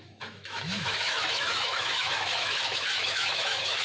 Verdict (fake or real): fake